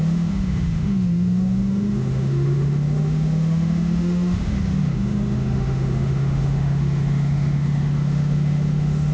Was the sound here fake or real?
fake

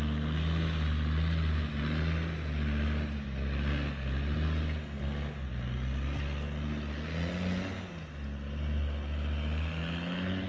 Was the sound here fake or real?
real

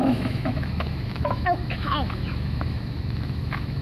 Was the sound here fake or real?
fake